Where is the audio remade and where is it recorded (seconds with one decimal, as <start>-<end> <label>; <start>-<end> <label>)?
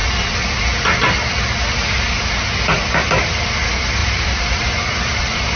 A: 0.0-4.0 recorded; 4.0-5.6 remade